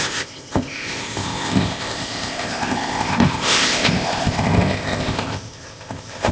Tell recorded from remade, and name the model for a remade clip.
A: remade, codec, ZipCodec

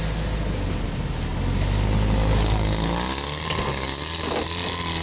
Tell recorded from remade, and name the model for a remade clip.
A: recorded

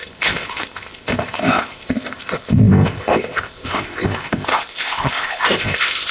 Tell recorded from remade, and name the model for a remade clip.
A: remade, codec, ZipCodec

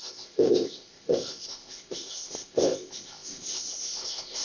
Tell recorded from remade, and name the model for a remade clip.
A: remade, codec, ZipCodec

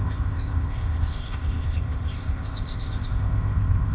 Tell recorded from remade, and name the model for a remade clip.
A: remade, codec, ZipCodec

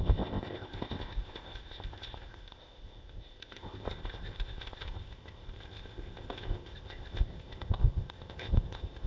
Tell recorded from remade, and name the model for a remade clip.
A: remade, codec, ZipCodec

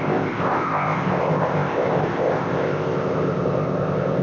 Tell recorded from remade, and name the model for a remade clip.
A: remade, codec, ZipCodec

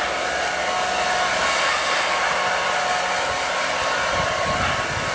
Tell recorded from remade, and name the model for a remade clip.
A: recorded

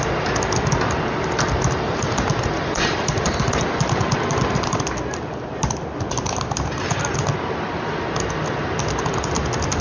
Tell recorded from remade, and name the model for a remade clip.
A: recorded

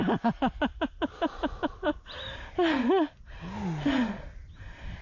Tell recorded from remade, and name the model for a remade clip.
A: recorded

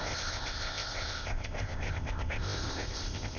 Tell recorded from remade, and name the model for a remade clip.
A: remade, codec, ZipCodec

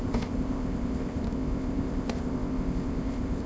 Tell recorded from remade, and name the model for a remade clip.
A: remade, codec, ZipCodec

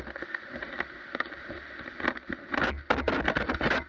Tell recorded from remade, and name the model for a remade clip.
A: recorded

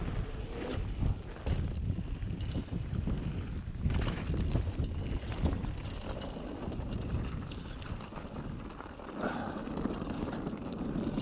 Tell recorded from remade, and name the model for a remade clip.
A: recorded